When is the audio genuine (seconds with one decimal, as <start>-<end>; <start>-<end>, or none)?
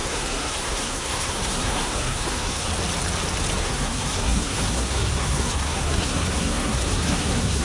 2.7-3.6